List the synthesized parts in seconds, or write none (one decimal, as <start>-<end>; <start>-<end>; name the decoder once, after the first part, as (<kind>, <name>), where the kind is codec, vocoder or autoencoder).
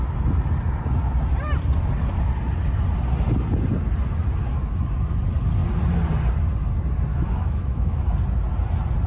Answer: 7.1-8.0 (autoencoder, DAC-VAE)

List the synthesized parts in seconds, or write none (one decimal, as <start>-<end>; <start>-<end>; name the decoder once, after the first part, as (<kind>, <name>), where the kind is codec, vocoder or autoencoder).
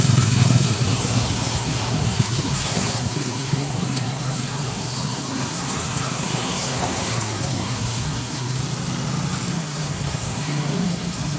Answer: 0.0-8.6 (codec, SNAC); 9.5-11.4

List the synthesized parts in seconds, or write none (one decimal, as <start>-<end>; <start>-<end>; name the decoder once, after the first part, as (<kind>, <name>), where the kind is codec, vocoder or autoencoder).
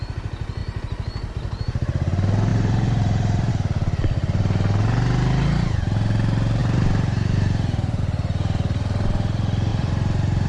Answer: 2.5-3.5 (vocoder, BigVGAN v2); 6.6-8.0; 9.7-10.5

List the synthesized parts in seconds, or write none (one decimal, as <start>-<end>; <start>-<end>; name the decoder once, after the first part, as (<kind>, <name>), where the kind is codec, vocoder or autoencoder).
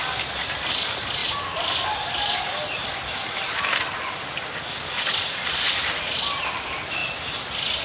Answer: none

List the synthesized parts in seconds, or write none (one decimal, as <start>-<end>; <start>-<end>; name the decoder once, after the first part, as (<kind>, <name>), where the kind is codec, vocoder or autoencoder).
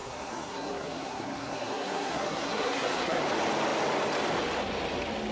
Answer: 0.0-3.2 (codec, SNAC)